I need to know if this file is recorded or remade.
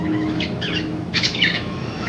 remade